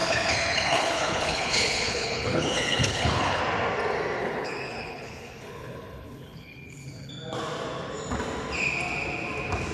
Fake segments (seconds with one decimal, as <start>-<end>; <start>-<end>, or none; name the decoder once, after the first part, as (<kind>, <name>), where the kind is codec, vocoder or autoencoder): 0.0-3.4 (codec, HILCodec); 4.2-7.1